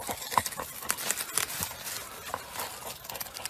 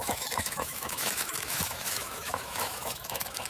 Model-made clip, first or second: second